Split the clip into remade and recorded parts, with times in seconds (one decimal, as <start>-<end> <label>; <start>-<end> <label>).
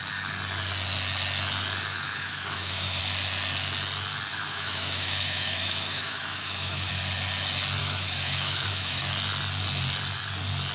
0.0-1.9 recorded; 1.9-3.0 remade; 3.0-4.3 recorded; 4.3-6.9 remade; 6.9-7.8 recorded; 7.8-9.0 remade; 9.0-10.7 recorded